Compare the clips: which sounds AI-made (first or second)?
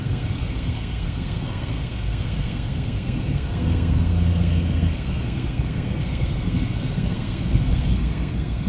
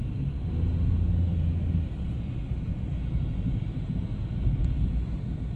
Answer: first